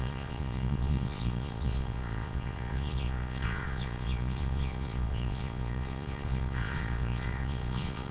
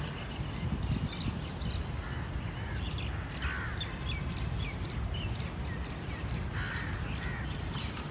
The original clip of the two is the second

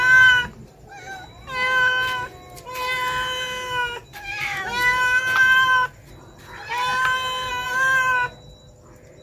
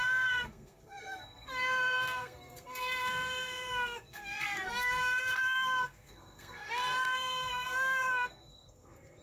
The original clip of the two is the first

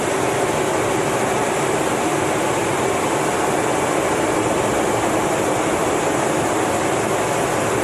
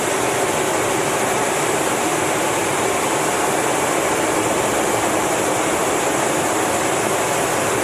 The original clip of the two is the first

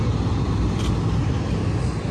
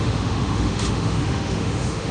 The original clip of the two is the first